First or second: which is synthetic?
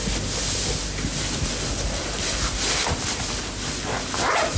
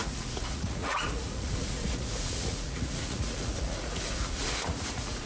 second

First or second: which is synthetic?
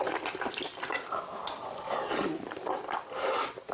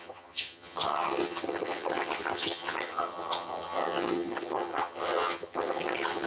second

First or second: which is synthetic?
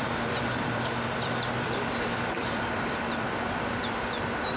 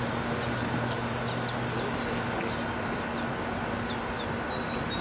first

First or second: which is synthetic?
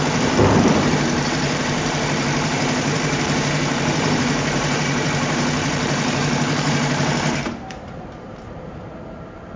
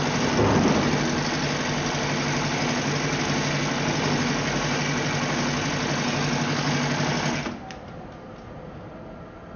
first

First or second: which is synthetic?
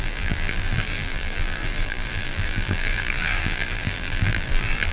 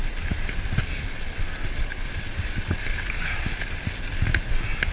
first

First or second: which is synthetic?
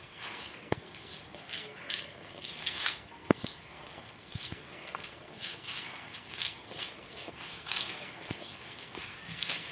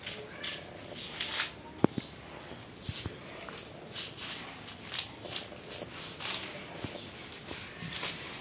first